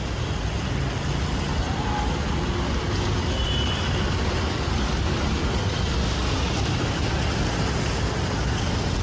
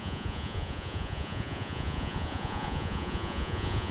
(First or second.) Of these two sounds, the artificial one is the second